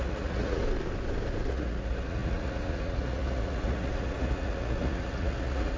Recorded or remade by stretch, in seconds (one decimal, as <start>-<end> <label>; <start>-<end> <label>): 0.0-0.6 remade; 0.6-1.5 recorded; 1.5-5.8 remade